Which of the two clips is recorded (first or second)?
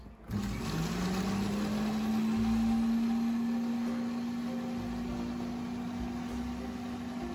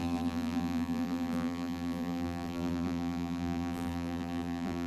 first